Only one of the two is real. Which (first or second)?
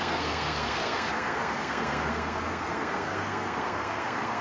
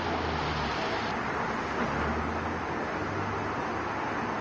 second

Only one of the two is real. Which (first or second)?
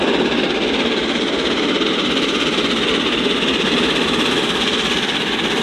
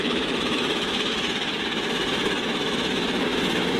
first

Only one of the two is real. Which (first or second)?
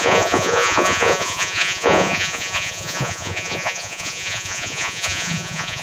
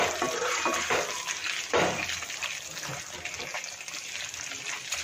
second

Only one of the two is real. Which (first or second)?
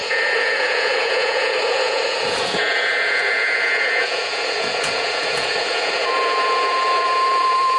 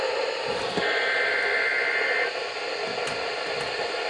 second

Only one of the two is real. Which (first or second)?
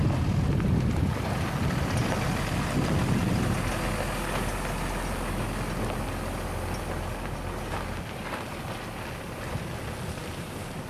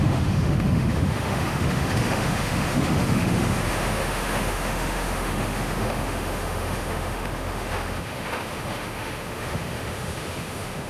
first